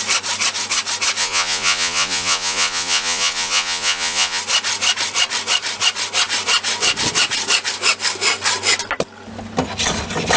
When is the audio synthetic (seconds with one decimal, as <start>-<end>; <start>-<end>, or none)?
1.2-4.4